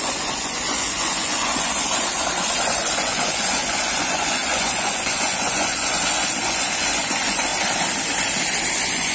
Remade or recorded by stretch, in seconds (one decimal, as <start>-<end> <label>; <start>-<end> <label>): 0.0-7.5 remade; 7.5-8.7 recorded; 8.7-9.1 remade